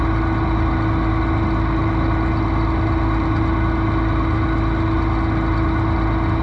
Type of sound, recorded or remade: recorded